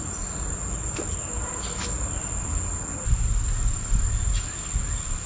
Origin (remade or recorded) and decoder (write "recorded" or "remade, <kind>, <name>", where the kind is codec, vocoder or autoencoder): recorded